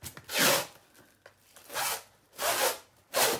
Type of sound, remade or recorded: recorded